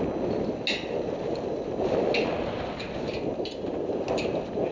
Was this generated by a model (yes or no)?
no